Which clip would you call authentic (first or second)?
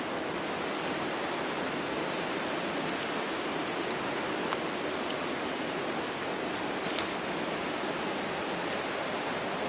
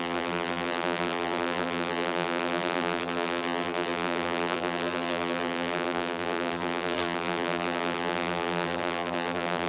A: first